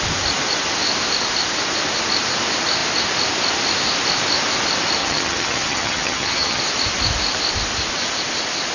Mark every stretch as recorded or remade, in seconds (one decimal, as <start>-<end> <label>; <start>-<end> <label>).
0.0-5.0 recorded; 5.0-6.6 remade; 6.6-8.7 recorded